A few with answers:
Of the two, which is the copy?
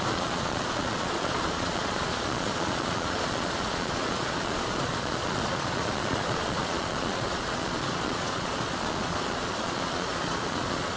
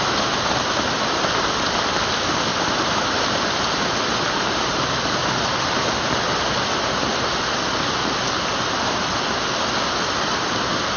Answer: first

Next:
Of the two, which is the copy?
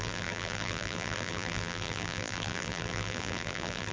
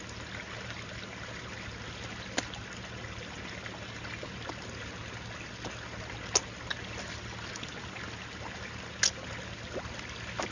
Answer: first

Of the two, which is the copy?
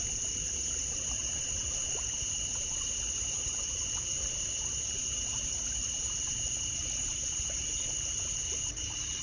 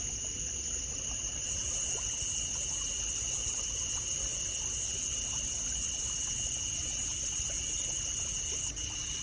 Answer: first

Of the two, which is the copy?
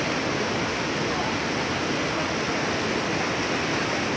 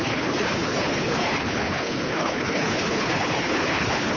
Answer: second